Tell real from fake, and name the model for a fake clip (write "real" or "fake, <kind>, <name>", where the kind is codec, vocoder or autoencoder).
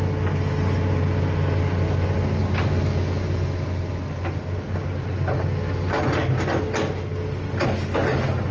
real